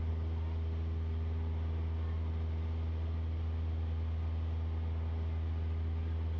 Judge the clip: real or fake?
real